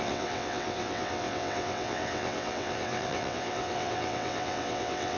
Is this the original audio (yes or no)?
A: no